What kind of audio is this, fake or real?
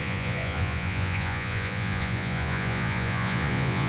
fake